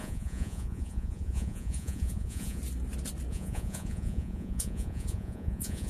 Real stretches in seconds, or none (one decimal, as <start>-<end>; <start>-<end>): 2.6-3.3